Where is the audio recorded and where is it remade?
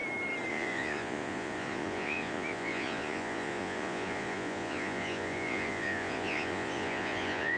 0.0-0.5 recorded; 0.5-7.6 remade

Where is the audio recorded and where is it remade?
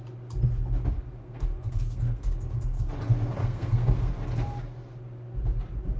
0.0-1.2 recorded; 1.2-2.9 remade; 2.9-3.4 recorded; 3.4-4.1 remade; 4.1-6.0 recorded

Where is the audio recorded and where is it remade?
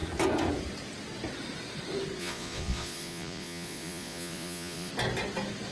0.0-2.2 recorded; 2.2-4.9 remade; 4.9-5.7 recorded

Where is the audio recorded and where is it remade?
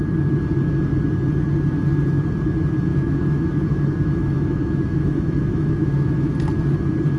0.0-2.9 recorded; 2.9-6.3 remade; 6.3-7.2 recorded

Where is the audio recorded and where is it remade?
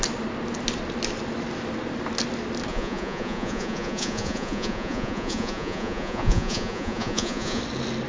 0.0-2.7 recorded; 2.7-7.6 remade; 7.6-8.1 recorded